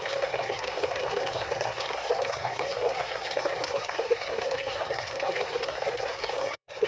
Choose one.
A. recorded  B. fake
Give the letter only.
B